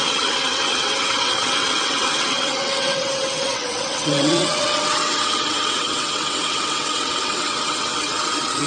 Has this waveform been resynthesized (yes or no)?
yes